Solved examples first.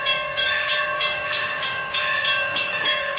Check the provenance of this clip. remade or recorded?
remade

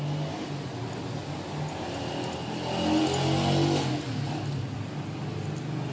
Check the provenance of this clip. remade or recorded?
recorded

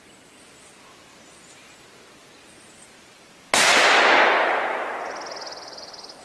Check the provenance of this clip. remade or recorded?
recorded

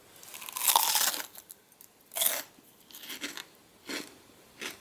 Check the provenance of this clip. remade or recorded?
recorded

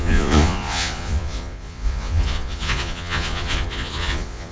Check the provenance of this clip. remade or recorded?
remade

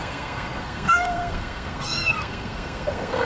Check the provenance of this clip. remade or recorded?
remade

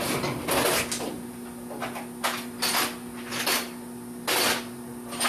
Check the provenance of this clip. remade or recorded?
recorded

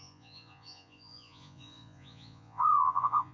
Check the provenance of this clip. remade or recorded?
remade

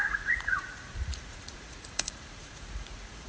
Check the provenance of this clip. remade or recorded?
remade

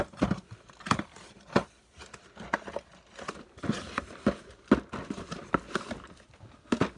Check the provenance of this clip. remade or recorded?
recorded